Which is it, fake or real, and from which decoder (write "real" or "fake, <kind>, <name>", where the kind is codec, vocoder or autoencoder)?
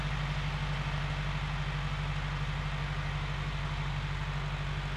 real